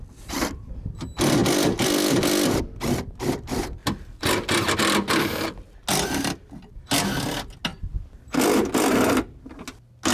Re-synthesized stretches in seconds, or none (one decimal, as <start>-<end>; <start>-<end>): 1.4-2.6; 7.7-8.4